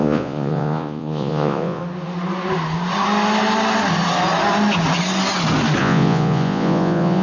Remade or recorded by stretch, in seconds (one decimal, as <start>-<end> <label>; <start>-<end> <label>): 0.0-1.8 remade; 1.8-5.8 recorded; 5.8-7.2 remade